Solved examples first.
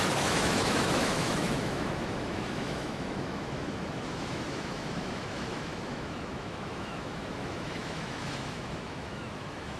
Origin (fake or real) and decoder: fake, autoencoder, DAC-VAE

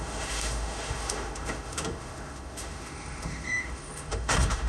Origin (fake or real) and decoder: fake, autoencoder, DAC-VAE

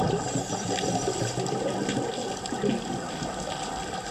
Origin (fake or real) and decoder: real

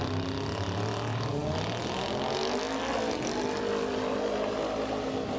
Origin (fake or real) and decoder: real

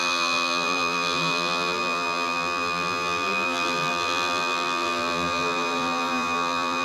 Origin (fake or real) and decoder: fake, vocoder, BigVGAN v2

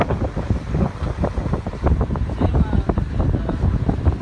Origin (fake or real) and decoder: real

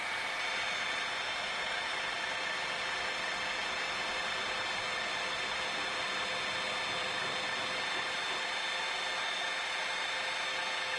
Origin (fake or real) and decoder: real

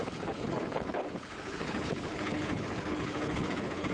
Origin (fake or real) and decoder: fake, codec, HILCodec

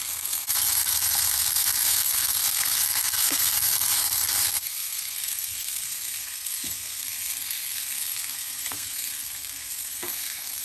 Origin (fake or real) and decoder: fake, codec, SNAC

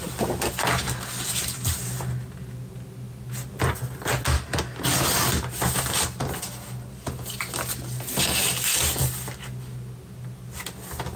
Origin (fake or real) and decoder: real